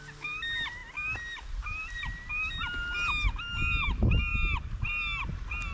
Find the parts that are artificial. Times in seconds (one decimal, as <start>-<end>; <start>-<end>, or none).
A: none